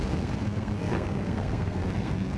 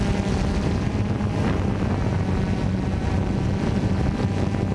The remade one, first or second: first